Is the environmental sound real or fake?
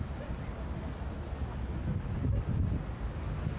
real